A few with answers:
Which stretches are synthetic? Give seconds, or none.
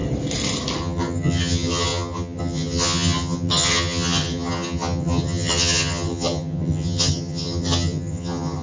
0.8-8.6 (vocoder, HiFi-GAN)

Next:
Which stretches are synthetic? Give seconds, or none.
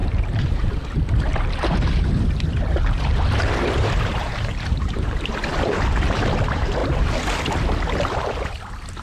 0.0-0.8 (vocoder, BigVGAN v2); 1.3-5.3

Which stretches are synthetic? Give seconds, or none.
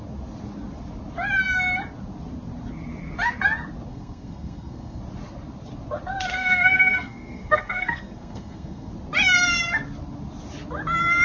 3.9-5.0 (codec, SNAC); 6.4-8.9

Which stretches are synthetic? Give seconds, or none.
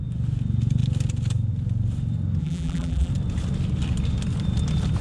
2.4-3.1 (vocoder, BigVGAN v2)